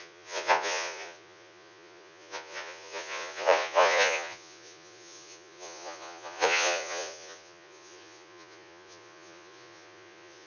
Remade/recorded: remade